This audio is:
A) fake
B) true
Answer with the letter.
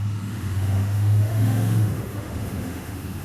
A